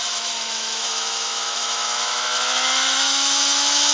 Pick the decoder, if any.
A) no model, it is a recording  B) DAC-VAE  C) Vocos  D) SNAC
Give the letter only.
B